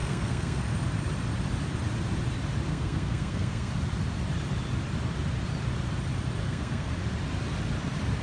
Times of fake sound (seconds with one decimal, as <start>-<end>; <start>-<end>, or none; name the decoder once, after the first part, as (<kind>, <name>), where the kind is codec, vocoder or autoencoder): 0.0-0.6 (codec, SNAC); 2.7-3.7; 6.4-6.9